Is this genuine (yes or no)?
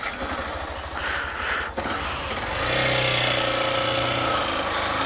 yes